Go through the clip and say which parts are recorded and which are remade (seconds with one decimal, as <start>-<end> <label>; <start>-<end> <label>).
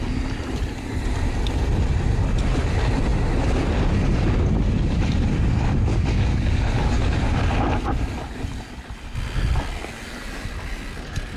0.0-5.9 recorded; 5.9-7.4 remade; 7.4-11.4 recorded